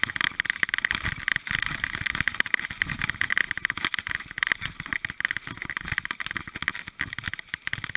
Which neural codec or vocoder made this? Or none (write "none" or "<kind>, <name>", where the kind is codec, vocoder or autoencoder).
none